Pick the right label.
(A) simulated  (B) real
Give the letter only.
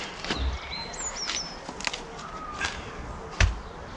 B